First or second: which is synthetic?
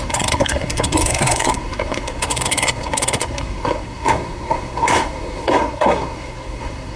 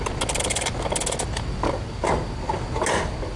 first